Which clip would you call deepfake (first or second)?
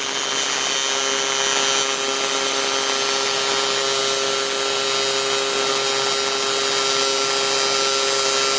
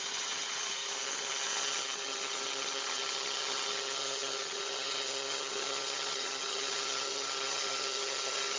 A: second